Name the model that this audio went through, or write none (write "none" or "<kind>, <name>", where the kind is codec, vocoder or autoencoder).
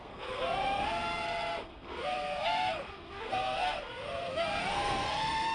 codec, SNAC